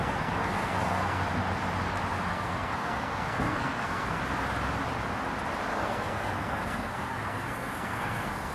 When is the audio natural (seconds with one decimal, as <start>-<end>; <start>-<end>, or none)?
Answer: 1.2-2.3; 4.2-5.7